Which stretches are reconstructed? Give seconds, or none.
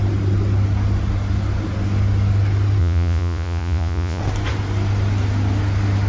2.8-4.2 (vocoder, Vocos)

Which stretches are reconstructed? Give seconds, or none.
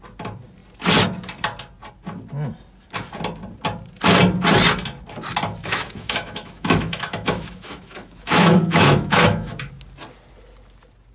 5.6-9.7 (autoencoder, DAC-VAE)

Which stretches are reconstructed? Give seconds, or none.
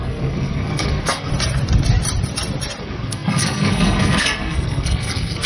0.0-1.3 (codec, SNAC); 2.8-5.5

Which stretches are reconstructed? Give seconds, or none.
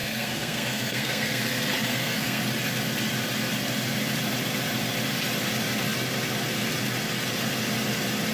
0.0-1.4 (codec, SNAC); 1.9-2.4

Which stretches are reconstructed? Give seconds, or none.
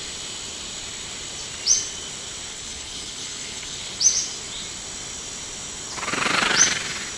2.5-3.8 (codec, HILCodec)